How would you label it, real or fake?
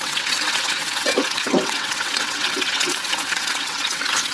fake